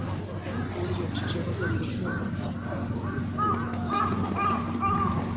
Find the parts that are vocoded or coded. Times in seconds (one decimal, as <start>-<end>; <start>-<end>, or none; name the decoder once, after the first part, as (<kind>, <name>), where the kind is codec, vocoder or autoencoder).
none